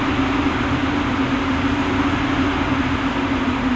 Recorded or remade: recorded